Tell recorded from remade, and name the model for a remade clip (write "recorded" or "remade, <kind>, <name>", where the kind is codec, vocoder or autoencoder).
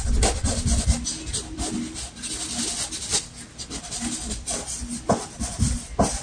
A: recorded